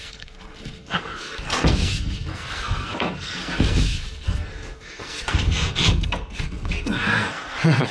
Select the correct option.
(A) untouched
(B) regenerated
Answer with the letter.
B